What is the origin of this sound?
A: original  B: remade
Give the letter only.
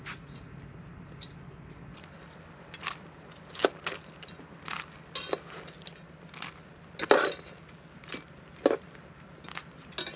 A